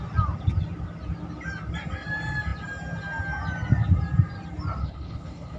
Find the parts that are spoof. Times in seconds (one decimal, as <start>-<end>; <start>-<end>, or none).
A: 4.8-5.6